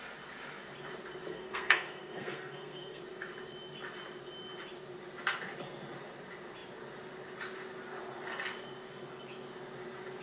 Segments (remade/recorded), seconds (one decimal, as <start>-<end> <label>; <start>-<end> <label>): 0.0-1.3 recorded; 1.3-3.0 remade; 3.0-10.2 recorded